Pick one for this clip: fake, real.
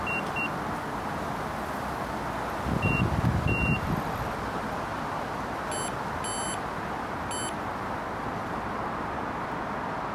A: real